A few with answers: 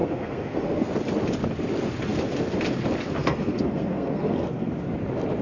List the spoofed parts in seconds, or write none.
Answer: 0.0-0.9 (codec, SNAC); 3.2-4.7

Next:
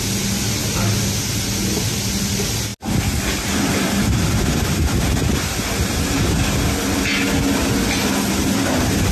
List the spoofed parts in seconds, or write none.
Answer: none

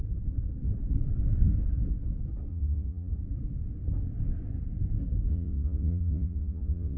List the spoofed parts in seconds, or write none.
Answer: 2.5-3.1 (vocoder, Vocos); 5.3-7.0

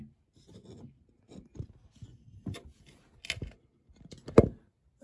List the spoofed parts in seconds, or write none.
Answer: 2.3-3.0 (vocoder, BigVGAN v2)

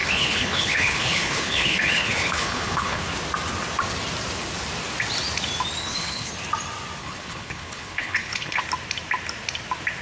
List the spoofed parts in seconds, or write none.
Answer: 0.0-3.0 (codec, HILCodec); 5.8-6.3; 7.0-8.6

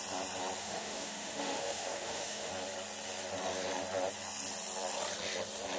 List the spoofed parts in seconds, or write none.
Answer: 0.6-2.5 (autoencoder, DAC-VAE)